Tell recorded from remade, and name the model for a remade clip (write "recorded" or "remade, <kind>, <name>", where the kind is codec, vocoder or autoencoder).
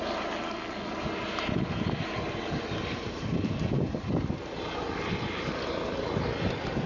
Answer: recorded